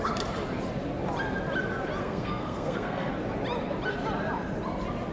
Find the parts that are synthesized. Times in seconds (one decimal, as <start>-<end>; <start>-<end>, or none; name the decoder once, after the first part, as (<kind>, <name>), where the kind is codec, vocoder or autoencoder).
2.0-3.1 (codec, SNAC)